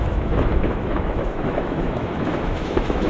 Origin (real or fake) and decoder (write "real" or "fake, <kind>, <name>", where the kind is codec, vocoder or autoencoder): fake, autoencoder, DAC-VAE